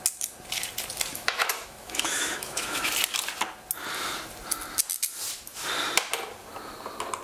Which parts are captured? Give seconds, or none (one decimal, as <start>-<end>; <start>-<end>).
0.0-1.1; 2.9-7.2